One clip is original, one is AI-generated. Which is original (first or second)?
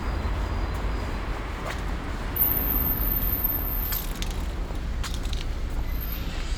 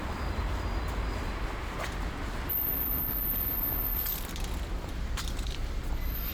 first